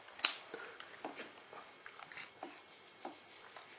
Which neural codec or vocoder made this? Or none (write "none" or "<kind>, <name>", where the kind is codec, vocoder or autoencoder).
none